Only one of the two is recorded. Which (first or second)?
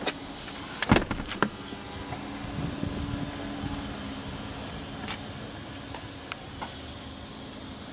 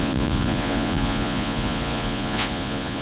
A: first